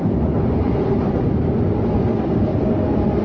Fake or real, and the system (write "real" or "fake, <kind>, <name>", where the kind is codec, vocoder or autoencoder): real